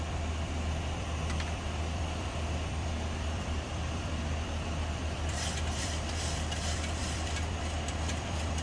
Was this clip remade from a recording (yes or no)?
yes